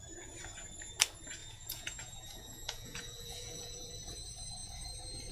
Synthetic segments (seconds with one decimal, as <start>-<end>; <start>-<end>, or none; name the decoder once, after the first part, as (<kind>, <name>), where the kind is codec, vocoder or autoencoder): 1.4-3.9 (vocoder, Vocos)